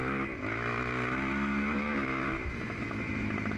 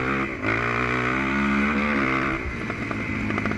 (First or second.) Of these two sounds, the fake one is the first